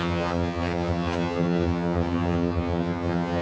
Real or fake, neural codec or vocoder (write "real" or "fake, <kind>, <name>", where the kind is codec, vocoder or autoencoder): fake, vocoder, HiFi-GAN